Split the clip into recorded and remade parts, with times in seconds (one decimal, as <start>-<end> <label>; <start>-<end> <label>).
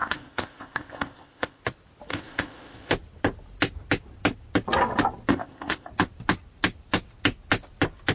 0.0-1.6 remade; 1.6-2.1 recorded; 2.1-2.9 remade; 2.9-5.3 recorded; 5.3-5.9 remade; 5.9-8.1 recorded